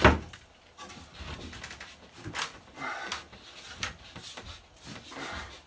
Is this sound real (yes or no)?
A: yes